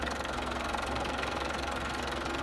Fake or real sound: fake